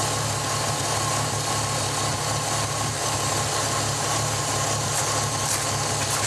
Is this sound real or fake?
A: real